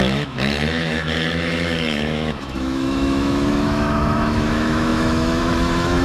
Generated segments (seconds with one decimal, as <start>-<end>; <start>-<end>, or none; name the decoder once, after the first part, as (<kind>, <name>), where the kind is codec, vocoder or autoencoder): 0.0-6.0 (autoencoder, DAC-VAE)